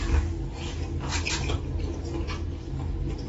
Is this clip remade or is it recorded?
recorded